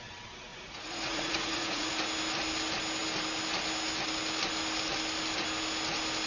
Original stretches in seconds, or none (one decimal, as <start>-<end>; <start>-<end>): 0.0-0.5; 1.9-6.3